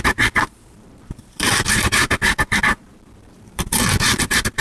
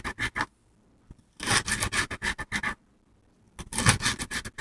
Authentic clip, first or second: second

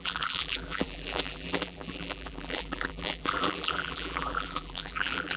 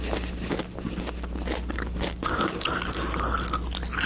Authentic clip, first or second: second